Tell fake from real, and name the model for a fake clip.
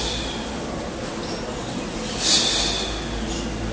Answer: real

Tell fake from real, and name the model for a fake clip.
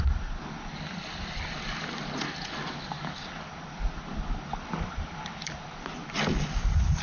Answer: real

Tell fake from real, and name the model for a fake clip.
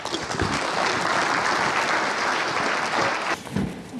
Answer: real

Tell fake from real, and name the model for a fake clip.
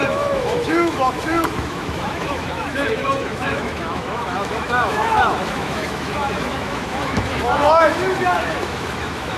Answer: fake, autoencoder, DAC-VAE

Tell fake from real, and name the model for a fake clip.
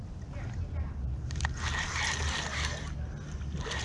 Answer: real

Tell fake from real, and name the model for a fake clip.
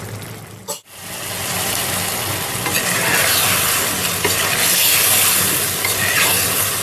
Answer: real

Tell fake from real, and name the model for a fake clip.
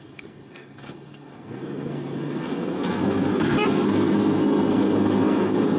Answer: fake, codec, SNAC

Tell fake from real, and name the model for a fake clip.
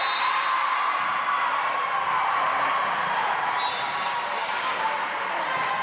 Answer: real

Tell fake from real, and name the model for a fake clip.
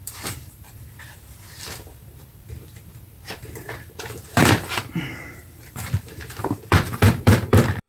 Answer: fake, vocoder, BigVGAN v2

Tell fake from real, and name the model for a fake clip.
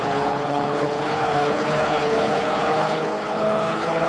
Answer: fake, codec, HILCodec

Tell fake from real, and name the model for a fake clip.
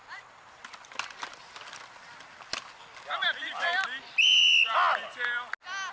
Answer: real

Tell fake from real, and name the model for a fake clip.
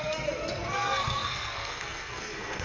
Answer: fake, codec, SNAC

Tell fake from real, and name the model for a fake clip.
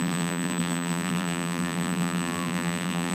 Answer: fake, vocoder, BigVGAN v2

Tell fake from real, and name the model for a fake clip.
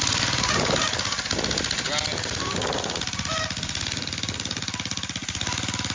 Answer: real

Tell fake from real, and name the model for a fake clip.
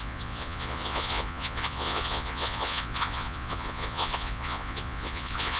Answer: fake, vocoder, Vocos